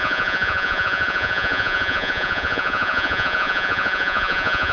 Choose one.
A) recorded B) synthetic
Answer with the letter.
B